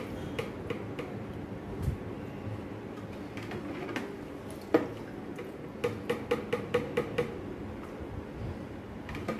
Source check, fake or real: real